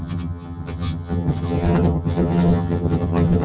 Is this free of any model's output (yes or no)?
no